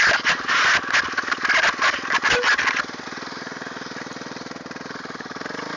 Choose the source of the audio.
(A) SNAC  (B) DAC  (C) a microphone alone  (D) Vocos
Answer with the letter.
C